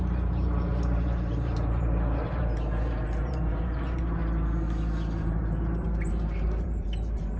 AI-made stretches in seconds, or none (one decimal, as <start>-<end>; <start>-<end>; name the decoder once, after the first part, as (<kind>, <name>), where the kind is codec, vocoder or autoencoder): 0.0-4.2 (vocoder, BigVGAN v2); 5.2-7.4